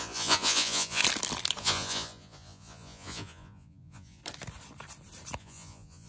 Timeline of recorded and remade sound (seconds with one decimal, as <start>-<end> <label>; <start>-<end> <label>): 0.0-1.0 remade; 1.0-1.6 recorded; 1.6-4.2 remade; 4.2-5.4 recorded; 5.4-6.1 remade